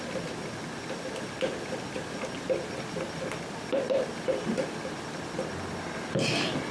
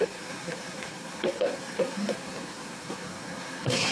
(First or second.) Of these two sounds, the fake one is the second